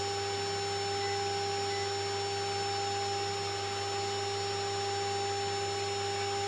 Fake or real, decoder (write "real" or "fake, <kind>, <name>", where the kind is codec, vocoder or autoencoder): real